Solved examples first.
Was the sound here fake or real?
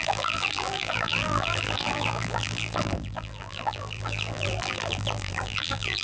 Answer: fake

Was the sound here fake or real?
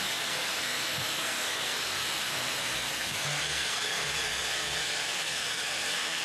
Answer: fake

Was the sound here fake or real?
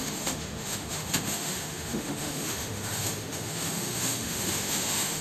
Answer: fake